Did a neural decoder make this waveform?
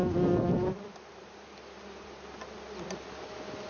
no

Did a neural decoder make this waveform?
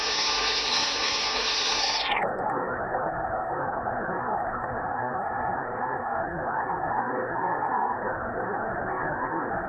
yes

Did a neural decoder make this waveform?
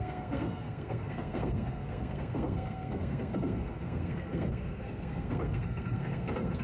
yes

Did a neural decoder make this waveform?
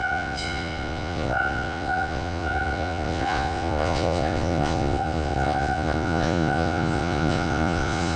yes